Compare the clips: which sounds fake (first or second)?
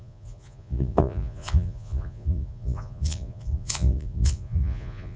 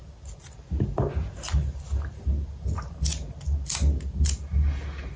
first